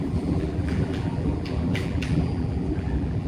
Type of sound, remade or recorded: remade